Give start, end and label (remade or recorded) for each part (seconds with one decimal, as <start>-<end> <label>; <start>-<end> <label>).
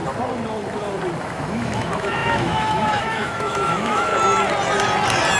0.0-1.2 recorded; 1.2-4.1 remade; 4.1-5.4 recorded